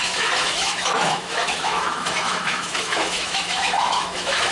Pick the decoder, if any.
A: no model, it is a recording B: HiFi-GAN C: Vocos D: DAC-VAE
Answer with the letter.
D